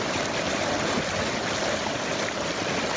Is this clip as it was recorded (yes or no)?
yes